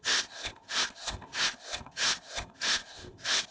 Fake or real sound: fake